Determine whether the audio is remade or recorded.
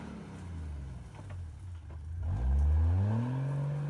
recorded